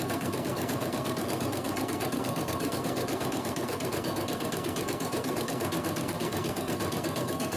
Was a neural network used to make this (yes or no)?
yes